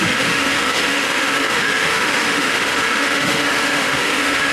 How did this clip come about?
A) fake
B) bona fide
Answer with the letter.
A